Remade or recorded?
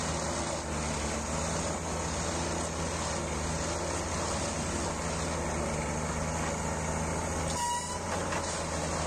recorded